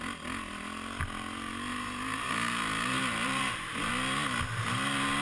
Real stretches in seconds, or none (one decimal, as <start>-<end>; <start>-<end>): 0.0-1.7; 3.9-5.2